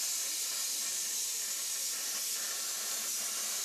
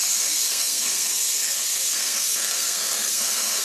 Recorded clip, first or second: first